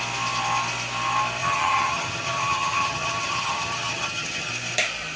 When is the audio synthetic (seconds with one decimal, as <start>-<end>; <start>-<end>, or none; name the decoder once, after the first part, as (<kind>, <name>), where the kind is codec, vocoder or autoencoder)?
1.4-4.5 (vocoder, HiFi-GAN)